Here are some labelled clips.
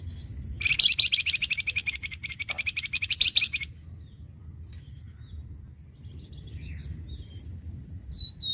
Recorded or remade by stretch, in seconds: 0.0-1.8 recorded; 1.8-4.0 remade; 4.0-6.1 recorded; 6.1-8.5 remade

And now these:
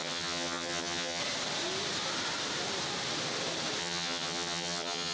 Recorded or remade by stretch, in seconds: 0.0-1.2 remade; 1.2-3.8 recorded; 3.8-5.1 remade

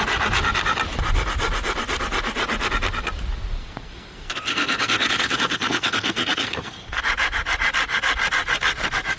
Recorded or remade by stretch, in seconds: 0.0-3.6 recorded; 3.6-7.0 remade; 7.0-9.2 recorded

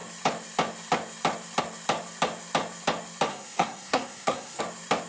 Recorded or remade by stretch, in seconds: 0.0-3.3 recorded; 3.3-4.6 remade; 4.6-5.1 recorded

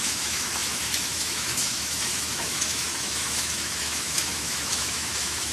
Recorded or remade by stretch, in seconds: 0.0-5.5 remade